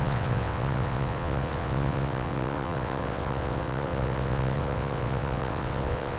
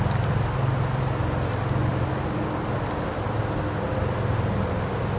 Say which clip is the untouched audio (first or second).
second